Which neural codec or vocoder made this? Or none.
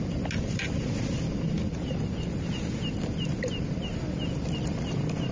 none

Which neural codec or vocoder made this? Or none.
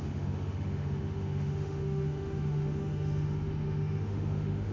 autoencoder, DAC-VAE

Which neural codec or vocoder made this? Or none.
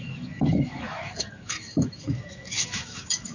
autoencoder, DAC-VAE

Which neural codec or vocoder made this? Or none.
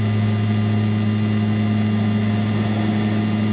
none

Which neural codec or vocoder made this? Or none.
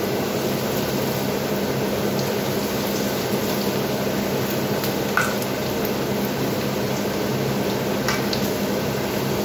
none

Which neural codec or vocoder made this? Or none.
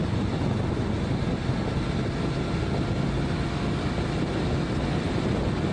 none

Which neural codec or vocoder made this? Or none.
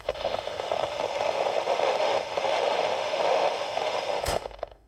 autoencoder, DAC-VAE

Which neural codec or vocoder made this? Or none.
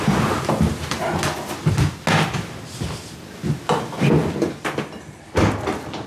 none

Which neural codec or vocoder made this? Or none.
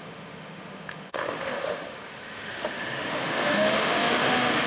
autoencoder, DAC-VAE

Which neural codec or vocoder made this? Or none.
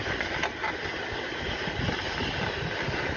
none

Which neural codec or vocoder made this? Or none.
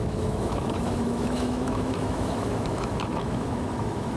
autoencoder, DAC-VAE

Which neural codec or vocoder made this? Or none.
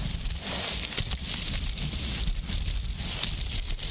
none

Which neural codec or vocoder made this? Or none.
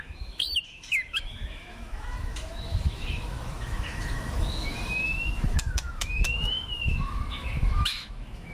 autoencoder, DAC-VAE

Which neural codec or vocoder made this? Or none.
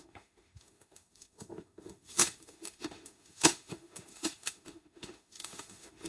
autoencoder, DAC-VAE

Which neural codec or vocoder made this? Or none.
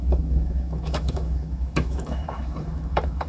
autoencoder, DAC-VAE